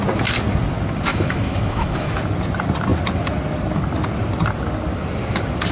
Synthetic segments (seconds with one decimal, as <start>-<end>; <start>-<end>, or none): 1.1-2.2